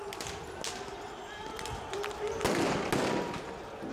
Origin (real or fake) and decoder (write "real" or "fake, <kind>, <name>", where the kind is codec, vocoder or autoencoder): real